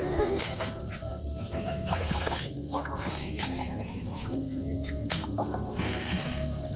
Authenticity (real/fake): fake